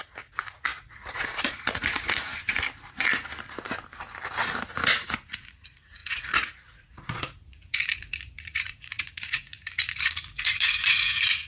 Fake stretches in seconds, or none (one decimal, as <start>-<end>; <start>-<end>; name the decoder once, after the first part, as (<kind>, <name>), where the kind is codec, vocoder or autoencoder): 0.0-2.3 (vocoder, Vocos); 4.7-11.5